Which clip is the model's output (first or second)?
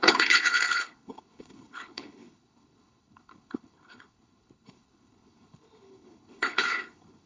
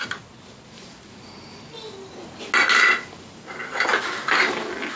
first